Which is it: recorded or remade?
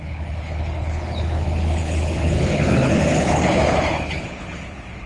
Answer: remade